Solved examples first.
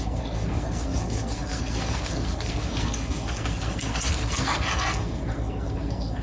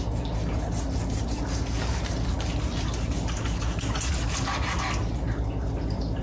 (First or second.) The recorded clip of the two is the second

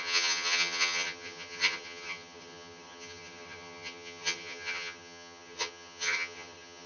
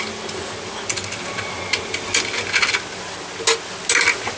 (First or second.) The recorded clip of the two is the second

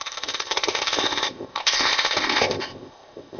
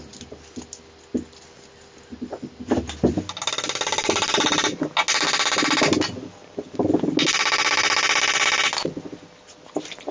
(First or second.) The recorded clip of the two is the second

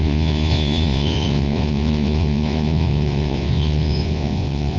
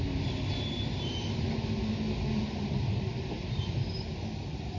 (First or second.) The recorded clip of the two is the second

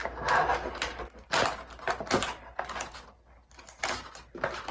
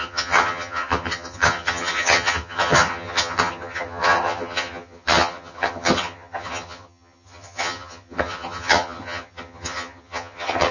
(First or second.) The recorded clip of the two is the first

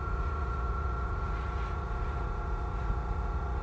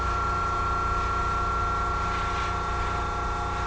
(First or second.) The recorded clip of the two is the second